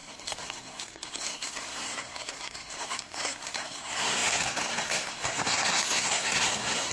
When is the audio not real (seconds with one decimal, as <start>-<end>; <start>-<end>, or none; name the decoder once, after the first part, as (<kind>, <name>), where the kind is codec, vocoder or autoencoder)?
0.0-6.9 (codec, SNAC)